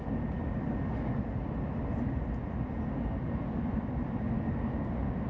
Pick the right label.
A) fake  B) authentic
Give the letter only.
B